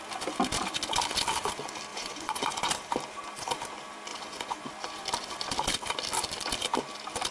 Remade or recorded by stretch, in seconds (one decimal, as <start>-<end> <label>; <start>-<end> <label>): 0.0-1.9 recorded; 1.9-2.7 remade; 2.7-4.1 recorded; 4.1-4.7 remade; 4.7-7.3 recorded